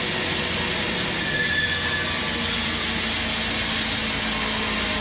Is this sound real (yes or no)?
yes